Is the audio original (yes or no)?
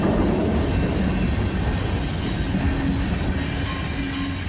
yes